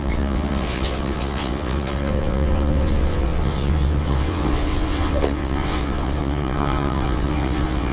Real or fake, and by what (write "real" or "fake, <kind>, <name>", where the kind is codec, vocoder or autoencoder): fake, vocoder, WaveNeXt